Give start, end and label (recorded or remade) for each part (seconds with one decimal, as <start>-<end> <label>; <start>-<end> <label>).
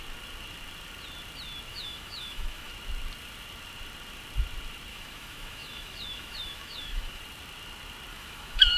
0.0-1.7 recorded; 1.7-2.7 remade; 2.7-4.9 recorded; 4.9-7.2 remade; 7.2-8.1 recorded; 8.1-8.8 remade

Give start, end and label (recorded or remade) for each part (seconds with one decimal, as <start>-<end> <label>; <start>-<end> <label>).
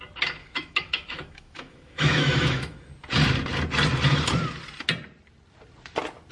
0.0-0.4 recorded; 0.4-2.9 remade; 2.9-6.3 recorded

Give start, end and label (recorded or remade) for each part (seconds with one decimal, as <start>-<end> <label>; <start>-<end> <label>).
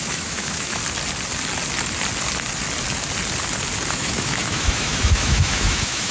0.0-0.8 remade; 0.8-3.9 recorded; 3.9-6.1 remade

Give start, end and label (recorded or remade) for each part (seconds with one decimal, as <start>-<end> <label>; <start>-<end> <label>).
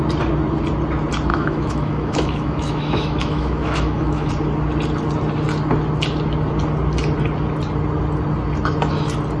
0.0-1.3 recorded; 1.3-4.3 remade; 4.3-9.4 recorded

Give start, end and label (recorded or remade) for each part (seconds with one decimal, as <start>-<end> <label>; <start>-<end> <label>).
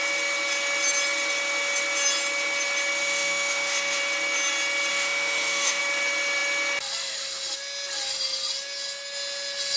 0.0-3.0 recorded; 3.0-4.0 remade; 4.0-4.9 recorded; 4.9-5.8 remade; 5.8-9.8 recorded